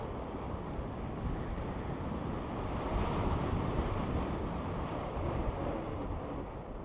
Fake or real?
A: real